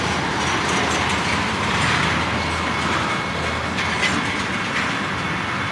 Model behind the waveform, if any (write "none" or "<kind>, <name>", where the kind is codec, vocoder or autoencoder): none